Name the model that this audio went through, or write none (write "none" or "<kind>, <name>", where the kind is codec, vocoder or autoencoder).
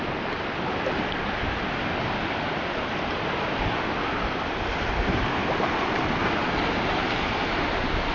none